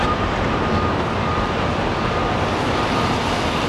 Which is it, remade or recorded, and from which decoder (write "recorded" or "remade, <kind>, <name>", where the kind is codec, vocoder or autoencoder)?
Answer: recorded